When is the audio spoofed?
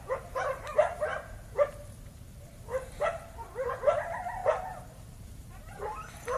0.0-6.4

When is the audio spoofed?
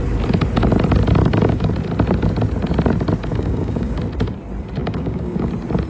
1.2-1.7; 3.3-4.0; 4.8-5.5